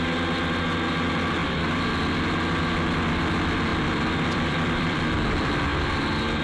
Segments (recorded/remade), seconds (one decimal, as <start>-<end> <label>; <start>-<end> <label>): 0.0-3.7 recorded; 3.7-5.0 remade; 5.0-5.7 recorded; 5.7-6.4 remade